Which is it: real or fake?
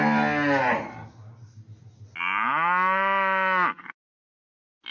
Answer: real